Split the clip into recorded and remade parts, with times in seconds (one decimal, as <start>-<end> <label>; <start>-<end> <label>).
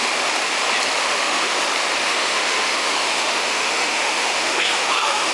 0.0-1.0 recorded; 1.0-1.6 remade; 1.6-2.0 recorded; 2.0-5.3 remade